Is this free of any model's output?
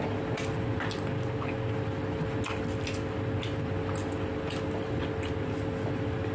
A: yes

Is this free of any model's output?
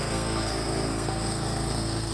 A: no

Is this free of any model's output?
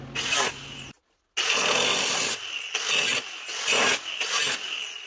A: yes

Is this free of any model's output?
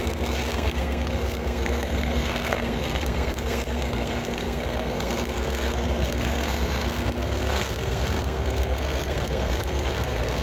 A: no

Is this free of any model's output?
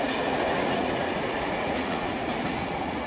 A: no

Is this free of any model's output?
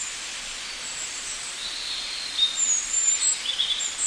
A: no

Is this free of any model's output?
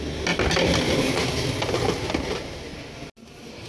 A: yes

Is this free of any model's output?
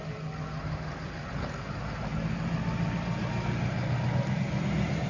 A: yes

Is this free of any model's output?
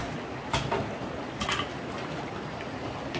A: yes